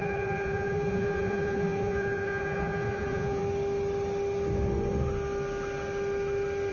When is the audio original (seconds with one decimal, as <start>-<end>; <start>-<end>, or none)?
3.4-6.7